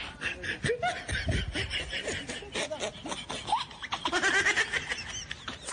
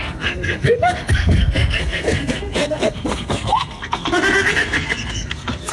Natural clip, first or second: first